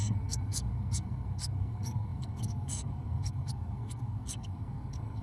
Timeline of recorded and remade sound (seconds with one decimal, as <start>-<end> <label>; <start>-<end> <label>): 0.0-5.2 remade